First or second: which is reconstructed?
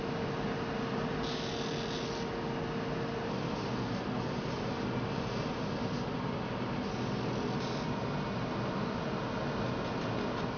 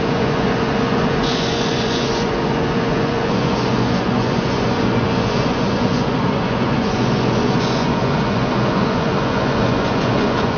second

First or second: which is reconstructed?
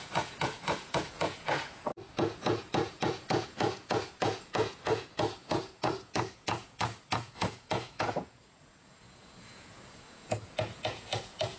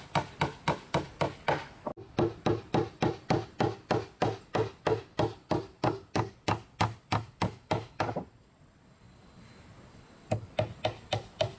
first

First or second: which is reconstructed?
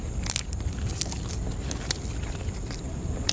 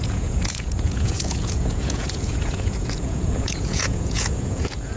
second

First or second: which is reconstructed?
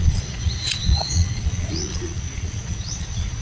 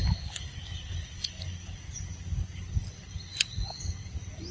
first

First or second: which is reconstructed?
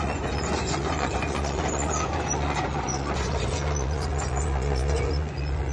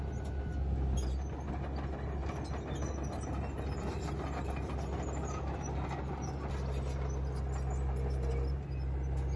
first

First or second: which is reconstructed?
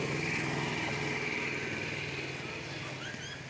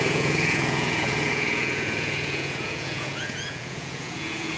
second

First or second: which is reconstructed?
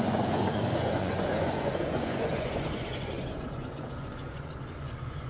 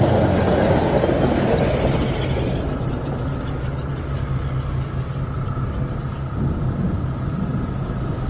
first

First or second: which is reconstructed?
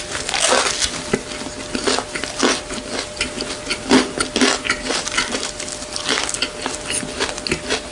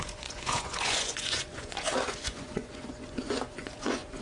second